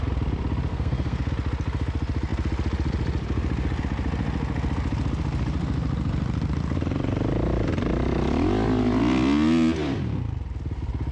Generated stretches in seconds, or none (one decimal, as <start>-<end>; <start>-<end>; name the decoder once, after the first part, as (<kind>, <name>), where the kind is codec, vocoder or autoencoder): 0.7-1.3 (codec, SNAC)